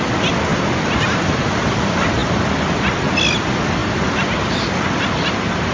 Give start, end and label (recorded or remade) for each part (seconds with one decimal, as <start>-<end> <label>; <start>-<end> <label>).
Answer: 0.0-3.8 recorded; 3.8-4.6 remade; 4.6-5.7 recorded